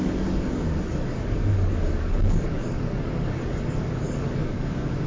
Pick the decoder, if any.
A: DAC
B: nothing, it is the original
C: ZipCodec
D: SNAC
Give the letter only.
A